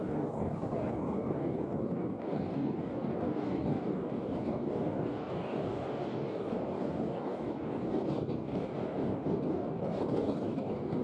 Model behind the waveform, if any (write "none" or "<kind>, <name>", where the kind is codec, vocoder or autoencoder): codec, DAC